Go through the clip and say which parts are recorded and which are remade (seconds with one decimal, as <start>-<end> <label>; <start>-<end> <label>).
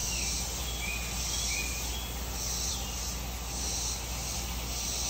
0.0-5.1 recorded